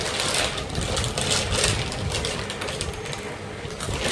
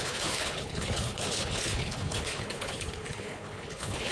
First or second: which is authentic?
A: first